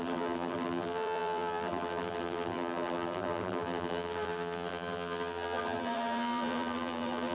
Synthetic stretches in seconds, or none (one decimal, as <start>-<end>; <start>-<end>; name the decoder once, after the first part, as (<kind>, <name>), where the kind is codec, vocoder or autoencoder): 0.0-7.3 (vocoder, BigVGAN v2)